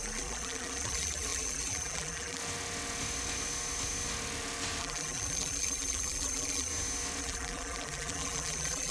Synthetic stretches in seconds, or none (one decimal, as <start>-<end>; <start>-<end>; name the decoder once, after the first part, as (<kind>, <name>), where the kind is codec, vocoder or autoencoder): 0.0-2.4 (vocoder, BigVGAN v2); 4.8-6.7; 7.2-8.9